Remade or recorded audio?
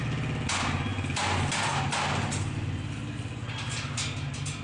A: recorded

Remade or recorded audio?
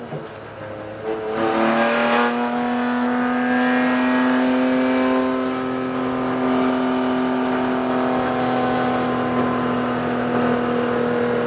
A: recorded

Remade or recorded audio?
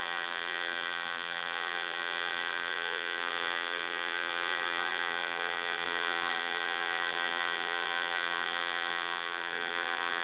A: remade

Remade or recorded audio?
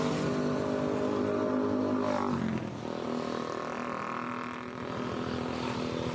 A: recorded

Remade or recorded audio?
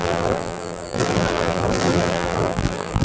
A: remade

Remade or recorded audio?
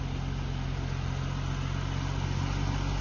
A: recorded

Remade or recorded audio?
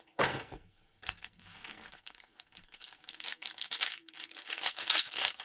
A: remade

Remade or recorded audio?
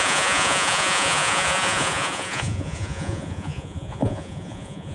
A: remade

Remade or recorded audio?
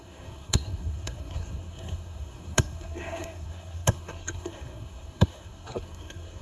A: remade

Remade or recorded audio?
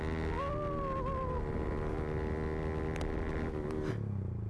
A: recorded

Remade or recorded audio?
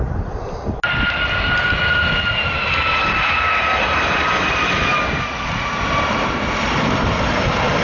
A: recorded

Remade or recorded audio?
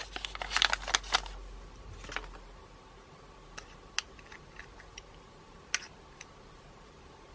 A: recorded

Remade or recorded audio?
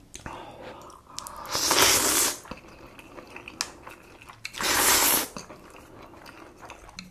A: recorded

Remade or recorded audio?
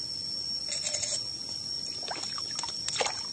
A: recorded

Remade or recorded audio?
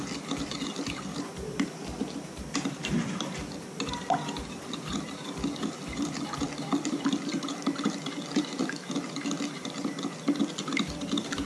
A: remade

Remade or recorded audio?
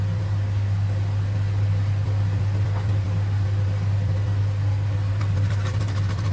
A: recorded